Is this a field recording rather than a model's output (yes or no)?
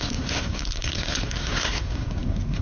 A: no